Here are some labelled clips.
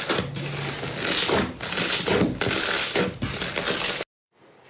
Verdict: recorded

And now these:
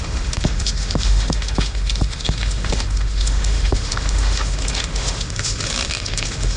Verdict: remade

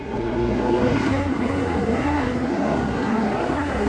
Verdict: remade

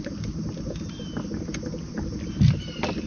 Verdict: recorded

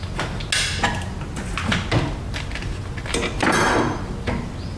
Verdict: recorded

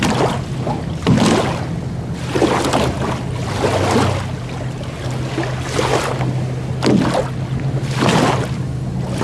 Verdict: recorded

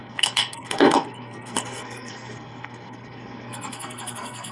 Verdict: remade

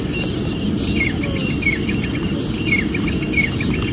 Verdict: recorded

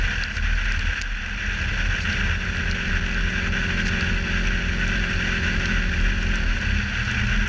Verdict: recorded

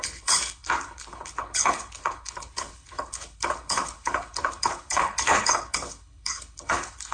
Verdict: remade